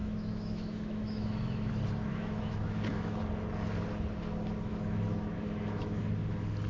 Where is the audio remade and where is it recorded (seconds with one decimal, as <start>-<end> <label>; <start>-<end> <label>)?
0.0-1.7 remade; 1.7-2.1 recorded; 2.1-3.2 remade; 3.2-4.7 recorded; 4.7-6.0 remade; 6.0-6.7 recorded